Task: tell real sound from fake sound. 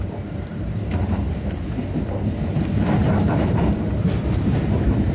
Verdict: fake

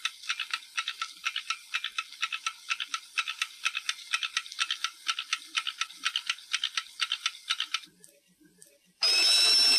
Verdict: real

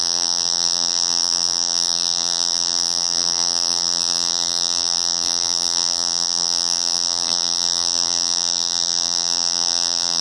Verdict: fake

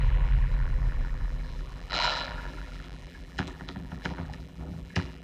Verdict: fake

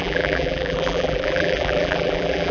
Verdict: fake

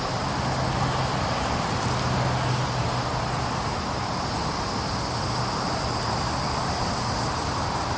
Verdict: real